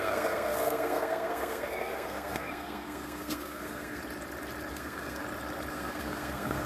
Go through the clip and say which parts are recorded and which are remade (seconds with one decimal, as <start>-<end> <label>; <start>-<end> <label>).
0.0-4.0 remade; 4.0-4.7 recorded; 4.7-5.2 remade; 5.2-5.7 recorded; 5.7-6.7 remade